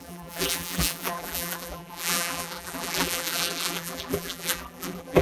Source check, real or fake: fake